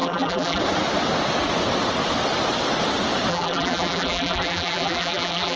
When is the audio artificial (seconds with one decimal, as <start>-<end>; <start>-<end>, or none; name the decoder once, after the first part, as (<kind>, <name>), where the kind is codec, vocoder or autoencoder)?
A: 0.0-0.6 (vocoder, BigVGAN v2); 3.3-5.6